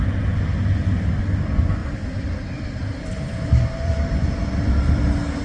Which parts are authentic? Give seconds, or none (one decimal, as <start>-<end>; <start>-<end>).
0.0-1.8; 5.0-5.4